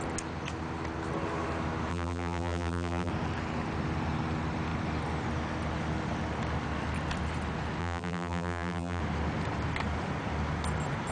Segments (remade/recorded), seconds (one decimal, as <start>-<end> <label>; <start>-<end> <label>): 0.0-1.9 recorded; 1.9-3.1 remade; 3.1-7.8 recorded; 7.8-9.0 remade; 9.0-11.1 recorded